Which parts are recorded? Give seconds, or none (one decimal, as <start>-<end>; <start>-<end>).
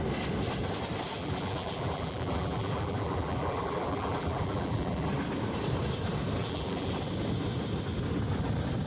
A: 0.0-1.2; 5.1-6.4; 6.9-8.9